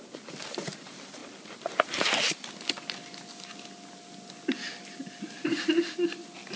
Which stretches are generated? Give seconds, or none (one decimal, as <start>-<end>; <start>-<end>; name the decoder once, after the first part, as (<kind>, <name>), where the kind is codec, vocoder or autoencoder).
none